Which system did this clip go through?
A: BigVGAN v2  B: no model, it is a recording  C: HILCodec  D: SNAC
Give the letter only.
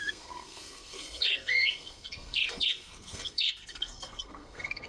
D